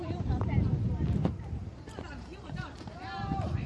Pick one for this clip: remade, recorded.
remade